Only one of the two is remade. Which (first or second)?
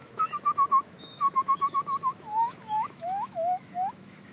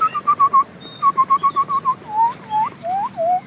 first